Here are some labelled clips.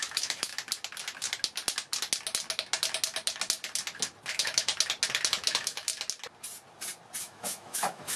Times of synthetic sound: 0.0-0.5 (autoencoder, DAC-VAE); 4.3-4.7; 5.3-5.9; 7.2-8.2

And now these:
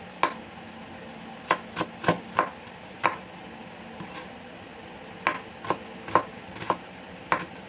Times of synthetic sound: 3.6-4.5 (vocoder, BigVGAN v2); 6.3-7.7

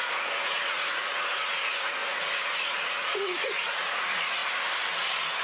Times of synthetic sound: 0.0-4.4 (vocoder, Vocos)

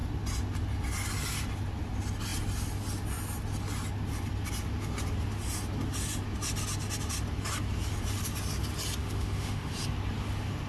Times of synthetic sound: 9.0-9.7 (autoencoder, DAC-VAE)